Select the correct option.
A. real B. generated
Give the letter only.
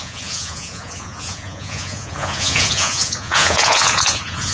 B